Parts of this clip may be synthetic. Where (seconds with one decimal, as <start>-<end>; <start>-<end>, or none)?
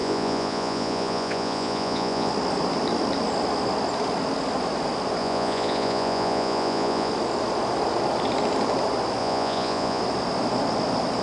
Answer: 0.0-2.3; 5.2-7.1; 9.2-10.0